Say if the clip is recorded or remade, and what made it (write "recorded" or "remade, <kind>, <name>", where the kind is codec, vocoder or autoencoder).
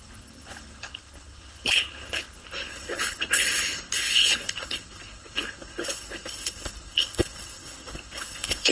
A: remade, codec, HILCodec